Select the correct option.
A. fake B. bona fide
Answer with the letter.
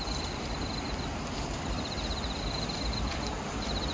A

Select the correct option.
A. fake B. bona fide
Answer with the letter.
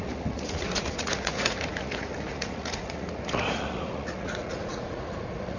A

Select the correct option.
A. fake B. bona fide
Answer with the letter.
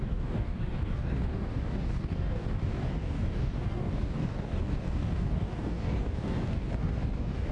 A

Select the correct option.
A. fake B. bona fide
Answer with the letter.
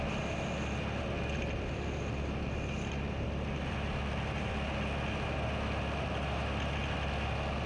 B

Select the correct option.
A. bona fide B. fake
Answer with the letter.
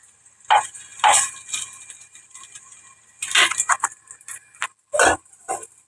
A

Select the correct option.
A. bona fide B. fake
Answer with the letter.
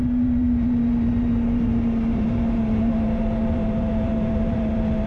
B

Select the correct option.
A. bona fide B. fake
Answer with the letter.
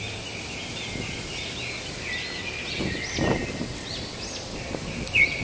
A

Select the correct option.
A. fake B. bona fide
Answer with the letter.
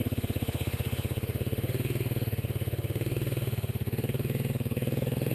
A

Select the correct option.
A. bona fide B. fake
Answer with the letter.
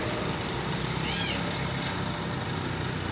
A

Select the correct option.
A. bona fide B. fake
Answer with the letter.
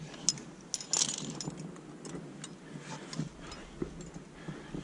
A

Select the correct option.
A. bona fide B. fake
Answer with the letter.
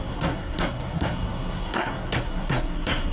B